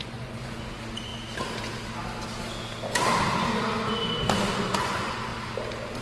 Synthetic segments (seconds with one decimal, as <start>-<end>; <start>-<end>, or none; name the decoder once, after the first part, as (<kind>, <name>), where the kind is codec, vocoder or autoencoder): 0.0-1.1 (vocoder, Vocos); 4.7-5.3

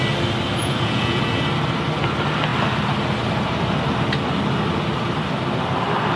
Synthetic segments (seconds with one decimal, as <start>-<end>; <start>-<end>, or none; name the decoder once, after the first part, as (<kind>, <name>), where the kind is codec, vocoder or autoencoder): 0.6-1.4 (vocoder, Vocos)